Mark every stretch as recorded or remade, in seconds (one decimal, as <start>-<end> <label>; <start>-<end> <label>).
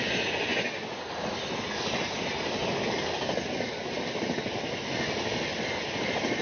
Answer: 0.0-6.4 recorded